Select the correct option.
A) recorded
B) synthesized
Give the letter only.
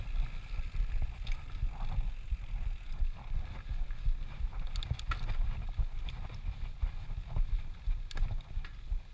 A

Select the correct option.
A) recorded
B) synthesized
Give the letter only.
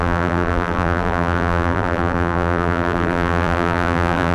B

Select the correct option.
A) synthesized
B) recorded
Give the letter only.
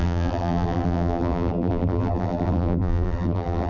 A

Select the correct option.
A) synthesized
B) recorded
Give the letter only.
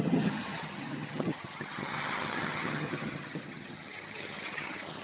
A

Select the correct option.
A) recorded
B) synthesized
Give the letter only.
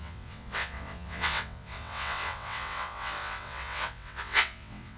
B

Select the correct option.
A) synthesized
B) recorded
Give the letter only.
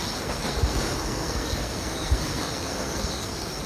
A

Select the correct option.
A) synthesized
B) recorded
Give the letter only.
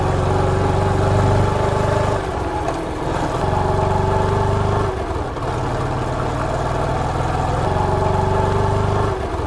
B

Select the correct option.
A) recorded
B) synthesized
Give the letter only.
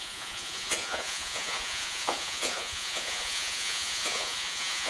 B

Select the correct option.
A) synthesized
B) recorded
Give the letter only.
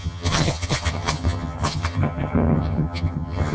A